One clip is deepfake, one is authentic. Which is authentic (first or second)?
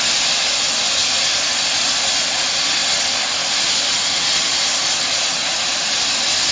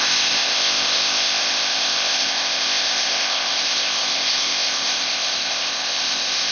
first